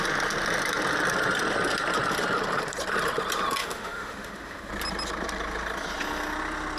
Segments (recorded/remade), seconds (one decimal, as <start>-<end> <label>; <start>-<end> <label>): 0.0-3.6 recorded; 3.6-4.7 remade; 4.7-6.8 recorded